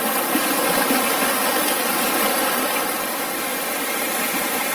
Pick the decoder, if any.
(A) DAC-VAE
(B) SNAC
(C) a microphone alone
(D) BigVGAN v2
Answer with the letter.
C